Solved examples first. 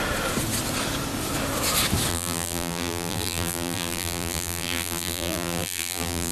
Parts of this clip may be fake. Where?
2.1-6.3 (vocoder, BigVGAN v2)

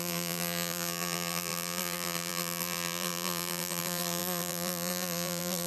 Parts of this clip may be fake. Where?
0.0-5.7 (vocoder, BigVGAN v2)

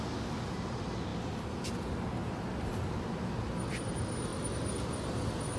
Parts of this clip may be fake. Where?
1.1-1.7 (vocoder, BigVGAN v2)